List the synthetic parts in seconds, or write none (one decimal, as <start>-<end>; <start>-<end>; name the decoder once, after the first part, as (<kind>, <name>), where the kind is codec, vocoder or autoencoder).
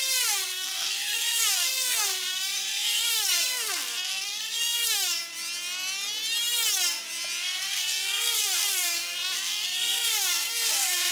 0.0-5.2 (codec, SNAC); 7.4-11.1